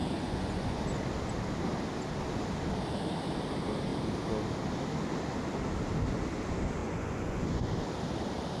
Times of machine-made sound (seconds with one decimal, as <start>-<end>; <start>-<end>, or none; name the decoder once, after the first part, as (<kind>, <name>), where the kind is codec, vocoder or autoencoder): 0.0-0.8 (vocoder, Vocos); 6.8-7.7